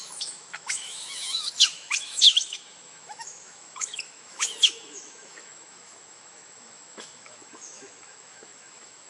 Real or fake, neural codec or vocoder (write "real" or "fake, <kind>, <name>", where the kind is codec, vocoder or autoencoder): fake, autoencoder, DAC-VAE